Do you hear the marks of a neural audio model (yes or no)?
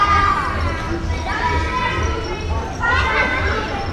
no